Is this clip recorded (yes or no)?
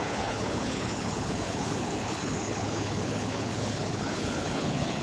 no